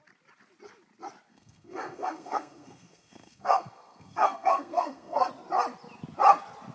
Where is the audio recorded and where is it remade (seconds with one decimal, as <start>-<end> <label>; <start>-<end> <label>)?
0.0-1.3 recorded; 1.3-5.3 remade; 5.3-6.7 recorded